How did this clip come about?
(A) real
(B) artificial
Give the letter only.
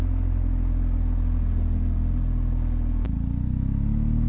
A